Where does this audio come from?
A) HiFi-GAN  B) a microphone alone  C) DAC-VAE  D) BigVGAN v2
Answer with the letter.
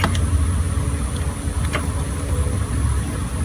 B